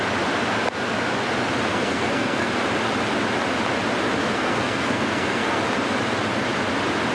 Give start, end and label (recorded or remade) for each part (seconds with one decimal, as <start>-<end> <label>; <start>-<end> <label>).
0.0-1.7 recorded; 1.7-2.5 remade; 2.5-4.2 recorded; 4.2-5.6 remade; 5.6-7.1 recorded